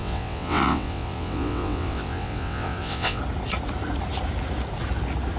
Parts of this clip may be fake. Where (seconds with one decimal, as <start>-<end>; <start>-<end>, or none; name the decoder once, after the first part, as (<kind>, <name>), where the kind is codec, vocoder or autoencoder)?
0.0-3.2 (vocoder, WaveNeXt)